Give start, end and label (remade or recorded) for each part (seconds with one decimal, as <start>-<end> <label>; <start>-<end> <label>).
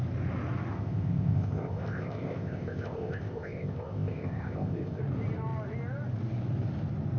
0.0-0.7 recorded; 0.7-5.0 remade; 5.0-7.2 recorded